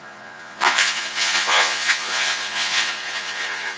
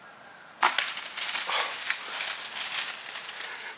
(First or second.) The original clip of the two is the second